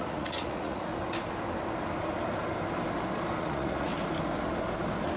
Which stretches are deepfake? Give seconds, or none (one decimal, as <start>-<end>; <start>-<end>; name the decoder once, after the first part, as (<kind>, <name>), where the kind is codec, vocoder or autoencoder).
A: 0.0-0.9 (vocoder, Vocos); 3.4-3.9